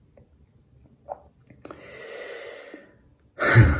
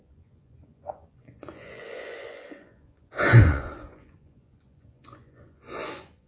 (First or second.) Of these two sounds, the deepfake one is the second